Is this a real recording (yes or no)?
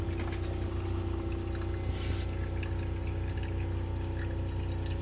yes